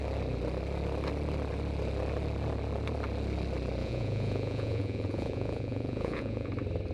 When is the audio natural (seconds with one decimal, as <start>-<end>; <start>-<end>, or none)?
0.0-3.8; 6.5-6.9